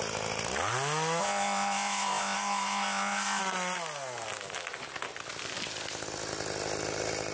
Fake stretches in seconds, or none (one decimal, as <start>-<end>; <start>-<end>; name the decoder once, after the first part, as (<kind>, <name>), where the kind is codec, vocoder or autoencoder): 1.2-3.4 (codec, ZipCodec)